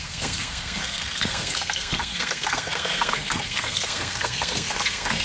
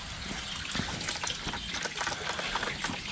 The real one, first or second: second